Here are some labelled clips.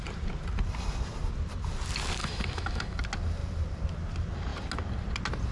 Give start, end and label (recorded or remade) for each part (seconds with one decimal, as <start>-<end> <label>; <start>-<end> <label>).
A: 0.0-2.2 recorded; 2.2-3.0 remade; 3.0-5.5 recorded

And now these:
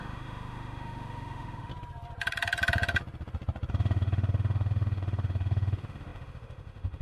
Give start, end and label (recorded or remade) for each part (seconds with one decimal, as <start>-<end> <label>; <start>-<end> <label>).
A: 0.0-1.7 remade; 1.7-3.7 recorded; 3.7-7.0 remade

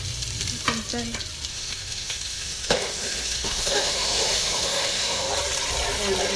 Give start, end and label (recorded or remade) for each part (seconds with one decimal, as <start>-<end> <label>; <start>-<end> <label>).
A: 0.0-1.5 recorded; 1.5-5.3 remade; 5.3-6.4 recorded